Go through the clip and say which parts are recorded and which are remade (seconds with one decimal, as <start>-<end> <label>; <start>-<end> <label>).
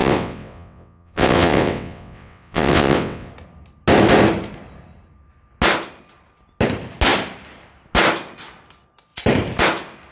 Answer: 0.0-3.3 remade; 3.3-10.1 recorded